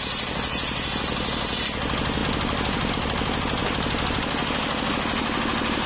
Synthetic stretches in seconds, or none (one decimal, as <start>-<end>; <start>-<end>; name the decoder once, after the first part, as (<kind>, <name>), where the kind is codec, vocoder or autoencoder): none